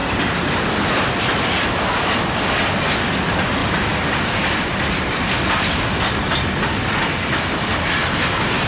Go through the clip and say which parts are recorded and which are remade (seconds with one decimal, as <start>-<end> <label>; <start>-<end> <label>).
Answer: 0.0-3.6 recorded; 3.6-4.5 remade; 4.5-8.7 recorded